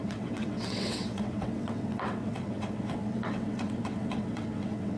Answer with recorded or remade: remade